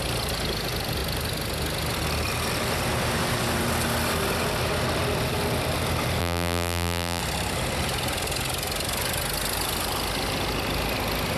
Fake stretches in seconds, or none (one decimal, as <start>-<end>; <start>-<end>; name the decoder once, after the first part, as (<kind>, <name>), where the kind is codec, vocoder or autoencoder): 6.2-7.2 (vocoder, BigVGAN v2)